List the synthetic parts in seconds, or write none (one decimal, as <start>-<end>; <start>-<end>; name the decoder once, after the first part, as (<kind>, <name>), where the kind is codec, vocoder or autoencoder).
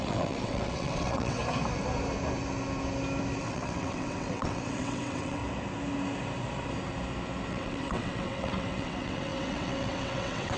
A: 0.0-1.4 (vocoder, WaveNeXt); 3.4-5.4; 7.5-10.6